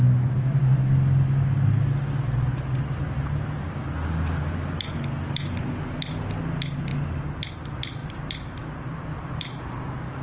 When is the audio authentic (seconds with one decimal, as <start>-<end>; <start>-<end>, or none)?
0.0-8.0; 9.7-10.2